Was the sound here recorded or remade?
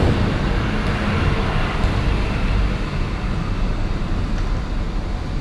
recorded